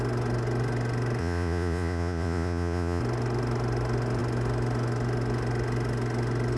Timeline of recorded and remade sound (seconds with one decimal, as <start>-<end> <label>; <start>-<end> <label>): 0.0-1.2 recorded; 1.2-3.0 remade; 3.0-6.6 recorded